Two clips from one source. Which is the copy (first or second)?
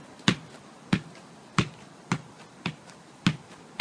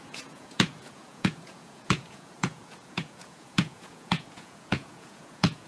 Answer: second